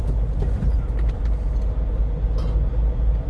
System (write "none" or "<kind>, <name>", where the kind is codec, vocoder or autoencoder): none